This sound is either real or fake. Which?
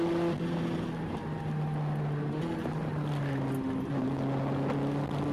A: real